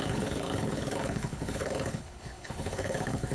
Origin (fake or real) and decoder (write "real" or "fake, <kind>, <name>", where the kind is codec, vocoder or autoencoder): fake, codec, HILCodec